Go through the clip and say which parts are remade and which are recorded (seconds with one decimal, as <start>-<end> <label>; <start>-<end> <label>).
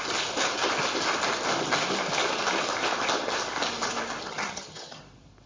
0.0-4.3 recorded; 4.3-5.0 remade; 5.0-5.5 recorded